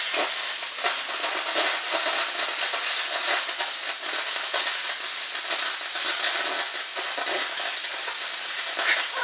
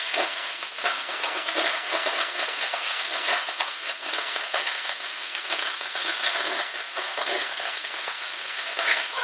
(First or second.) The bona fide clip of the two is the first